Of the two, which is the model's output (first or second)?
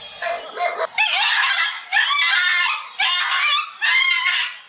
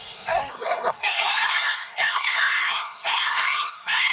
second